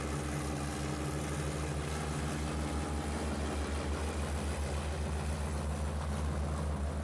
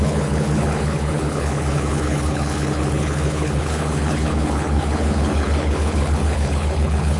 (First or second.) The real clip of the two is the first